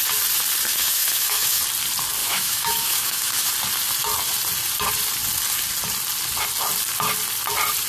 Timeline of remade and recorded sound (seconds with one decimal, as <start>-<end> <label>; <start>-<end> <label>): 0.0-0.7 recorded; 0.7-1.6 remade; 1.6-2.2 recorded; 2.2-3.5 remade; 3.5-7.9 recorded